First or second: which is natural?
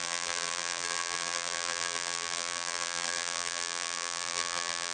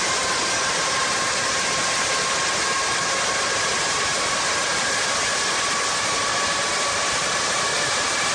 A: second